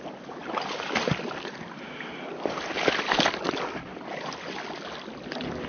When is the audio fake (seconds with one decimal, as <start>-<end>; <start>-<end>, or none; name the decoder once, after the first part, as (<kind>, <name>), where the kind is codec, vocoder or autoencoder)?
none